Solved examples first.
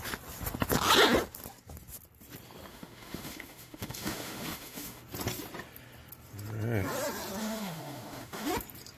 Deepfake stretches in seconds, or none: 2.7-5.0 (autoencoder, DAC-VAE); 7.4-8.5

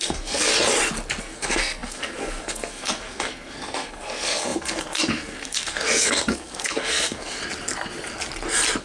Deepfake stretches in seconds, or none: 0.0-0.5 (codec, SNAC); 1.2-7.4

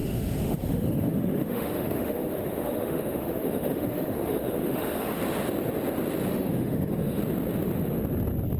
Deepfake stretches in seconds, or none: 0.0-5.2 (autoencoder, DAC-VAE); 6.3-7.2